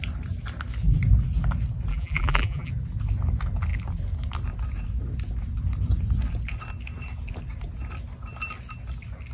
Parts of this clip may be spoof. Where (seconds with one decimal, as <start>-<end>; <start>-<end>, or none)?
1.9-2.7